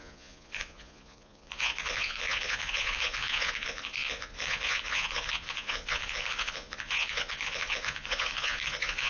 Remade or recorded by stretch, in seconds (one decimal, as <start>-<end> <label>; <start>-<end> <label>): 0.0-9.1 remade